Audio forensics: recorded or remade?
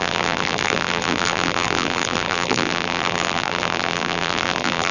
remade